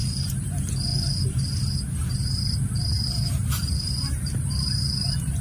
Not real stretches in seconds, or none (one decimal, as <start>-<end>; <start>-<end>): 0.0-0.5; 0.9-1.5; 2.0-5.4